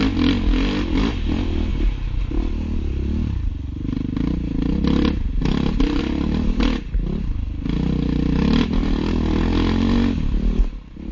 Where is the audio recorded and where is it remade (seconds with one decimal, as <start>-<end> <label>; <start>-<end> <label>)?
0.0-11.1 recorded